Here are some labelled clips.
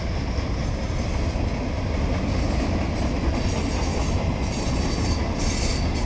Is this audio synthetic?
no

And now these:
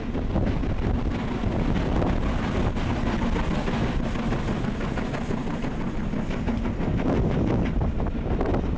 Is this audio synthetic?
no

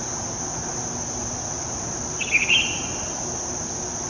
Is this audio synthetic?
no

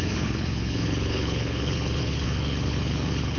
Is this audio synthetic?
yes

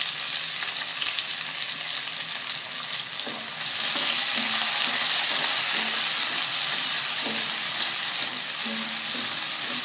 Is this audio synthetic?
no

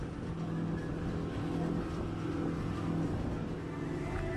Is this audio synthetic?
no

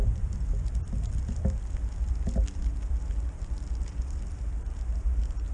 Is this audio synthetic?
no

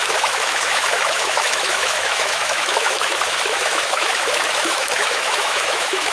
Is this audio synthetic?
yes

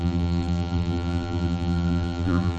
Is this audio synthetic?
yes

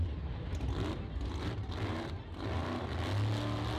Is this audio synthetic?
no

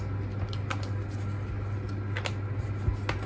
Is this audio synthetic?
no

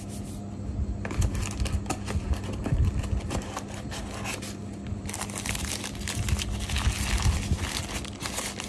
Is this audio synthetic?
no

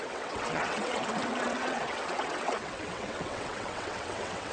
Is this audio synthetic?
yes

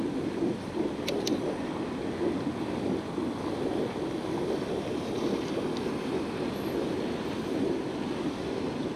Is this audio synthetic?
no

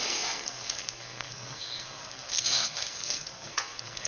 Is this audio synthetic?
yes